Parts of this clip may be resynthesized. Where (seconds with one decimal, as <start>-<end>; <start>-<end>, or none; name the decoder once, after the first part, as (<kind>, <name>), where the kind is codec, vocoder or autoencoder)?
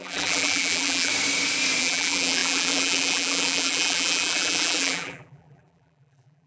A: 0.0-1.1 (vocoder, BigVGAN v2); 1.8-6.5